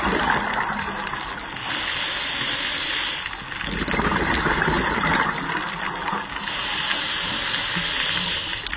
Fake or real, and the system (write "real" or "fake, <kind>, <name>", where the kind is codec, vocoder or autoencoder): real